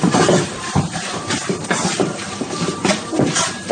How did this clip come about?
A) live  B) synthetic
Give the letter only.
B